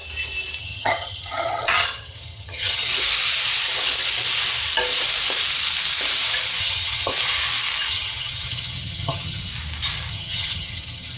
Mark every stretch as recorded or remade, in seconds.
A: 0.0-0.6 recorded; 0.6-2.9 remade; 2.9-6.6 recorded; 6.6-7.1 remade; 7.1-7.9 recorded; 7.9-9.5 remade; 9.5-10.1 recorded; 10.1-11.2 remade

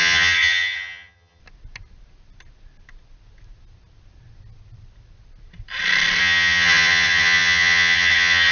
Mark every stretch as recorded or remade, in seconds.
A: 0.0-1.4 remade; 1.4-6.2 recorded; 6.2-8.5 remade

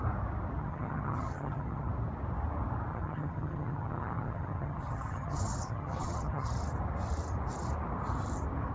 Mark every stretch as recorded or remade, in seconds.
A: 0.0-0.6 recorded; 0.6-1.9 remade; 1.9-2.9 recorded; 2.9-6.5 remade; 6.5-8.7 recorded

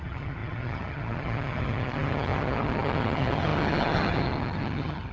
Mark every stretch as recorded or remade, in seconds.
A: 0.0-5.1 remade

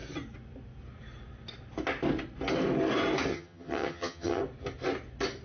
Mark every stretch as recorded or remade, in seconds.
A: 0.0-3.3 recorded; 3.3-4.4 remade; 4.4-5.4 recorded

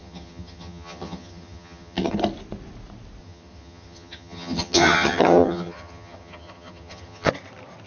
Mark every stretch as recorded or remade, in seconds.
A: 0.0-2.1 remade; 2.1-3.2 recorded; 3.2-7.3 remade; 7.3-7.9 recorded